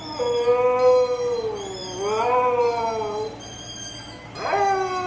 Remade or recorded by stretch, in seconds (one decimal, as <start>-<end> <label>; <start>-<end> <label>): 0.0-5.1 recorded